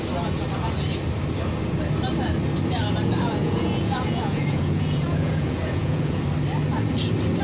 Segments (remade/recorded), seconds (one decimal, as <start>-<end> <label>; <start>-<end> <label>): 0.0-3.4 recorded; 3.4-6.2 remade; 6.2-7.4 recorded

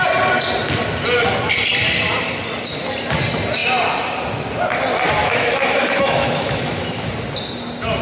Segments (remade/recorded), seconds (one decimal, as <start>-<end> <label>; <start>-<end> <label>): 0.0-5.2 recorded; 5.2-7.1 remade; 7.1-8.0 recorded